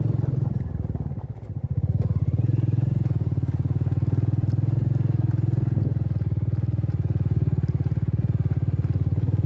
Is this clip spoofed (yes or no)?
no